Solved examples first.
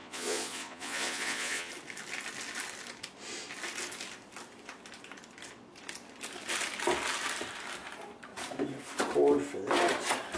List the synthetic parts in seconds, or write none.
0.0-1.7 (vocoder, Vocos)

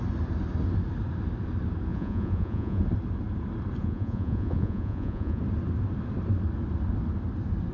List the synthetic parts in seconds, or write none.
1.9-2.8 (vocoder, Vocos); 3.8-5.4

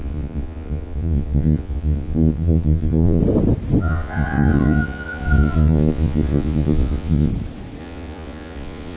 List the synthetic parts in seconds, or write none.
0.0-3.2 (vocoder, Vocos); 3.8-7.3; 7.8-9.0

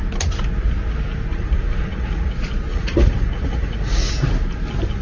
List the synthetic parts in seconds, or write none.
1.3-2.3 (vocoder, Vocos); 2.7-4.1

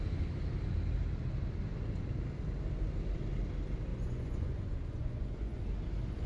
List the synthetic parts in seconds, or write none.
3.9-5.6 (vocoder, Vocos)

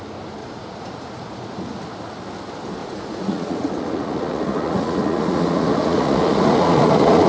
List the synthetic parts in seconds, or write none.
0.4-1.8 (vocoder, Vocos); 2.8-7.3

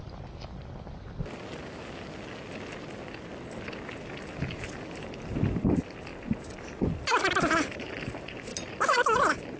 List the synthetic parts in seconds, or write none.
none